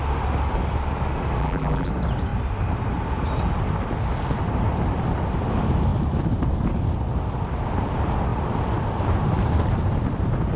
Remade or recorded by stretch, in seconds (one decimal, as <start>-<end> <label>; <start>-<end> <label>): 0.0-1.4 recorded; 1.4-1.9 remade; 1.9-10.6 recorded